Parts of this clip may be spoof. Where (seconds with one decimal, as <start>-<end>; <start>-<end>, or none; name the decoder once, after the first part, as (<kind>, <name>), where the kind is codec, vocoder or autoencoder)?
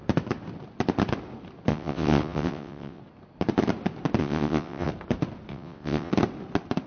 1.7-3.0 (vocoder, WaveNeXt); 4.2-4.9; 5.5-6.1